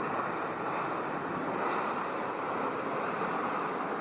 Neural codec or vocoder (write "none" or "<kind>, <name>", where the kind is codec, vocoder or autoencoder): none